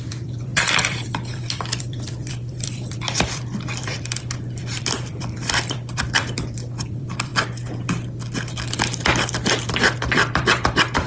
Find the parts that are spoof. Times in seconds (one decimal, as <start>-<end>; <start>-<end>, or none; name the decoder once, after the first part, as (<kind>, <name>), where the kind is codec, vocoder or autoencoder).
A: 0.0-7.3 (vocoder, BigVGAN v2); 9.7-11.1

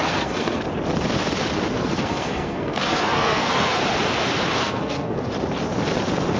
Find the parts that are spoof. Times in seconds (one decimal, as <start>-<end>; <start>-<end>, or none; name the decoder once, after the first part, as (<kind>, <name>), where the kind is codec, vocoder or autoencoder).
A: 0.0-0.6 (codec, SNAC); 1.8-3.8; 4.6-5.3

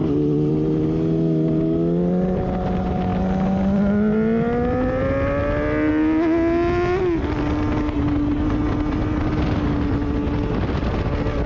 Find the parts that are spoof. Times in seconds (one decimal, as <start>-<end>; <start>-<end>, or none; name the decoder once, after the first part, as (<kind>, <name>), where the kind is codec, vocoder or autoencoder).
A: none

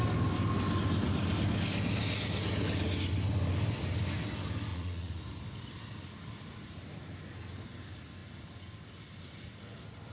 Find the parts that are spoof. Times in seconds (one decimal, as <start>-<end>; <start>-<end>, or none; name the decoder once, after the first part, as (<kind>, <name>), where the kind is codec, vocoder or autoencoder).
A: 4.7-5.2 (vocoder, Vocos)

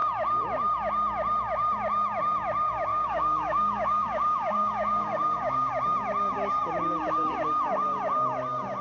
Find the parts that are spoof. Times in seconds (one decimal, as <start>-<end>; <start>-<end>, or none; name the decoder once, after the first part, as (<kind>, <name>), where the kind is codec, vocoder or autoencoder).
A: 2.9-5.7 (codec, DAC)

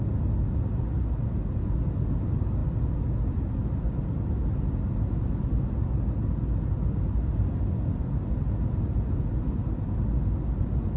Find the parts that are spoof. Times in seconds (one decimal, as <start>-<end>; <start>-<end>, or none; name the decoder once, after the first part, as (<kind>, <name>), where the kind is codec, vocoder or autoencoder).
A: none

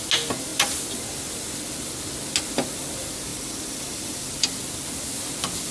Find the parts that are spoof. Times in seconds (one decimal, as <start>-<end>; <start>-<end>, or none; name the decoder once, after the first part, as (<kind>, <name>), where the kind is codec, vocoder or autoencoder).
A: 3.3-4.3 (vocoder, BigVGAN v2)